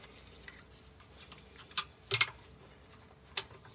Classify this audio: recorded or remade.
recorded